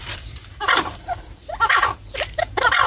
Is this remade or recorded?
remade